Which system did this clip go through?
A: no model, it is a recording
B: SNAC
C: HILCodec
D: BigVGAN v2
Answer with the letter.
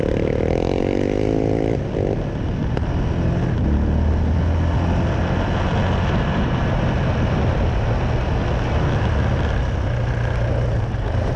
A